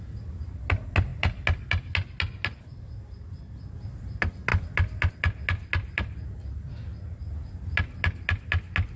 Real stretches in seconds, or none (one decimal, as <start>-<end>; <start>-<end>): 0.0-9.0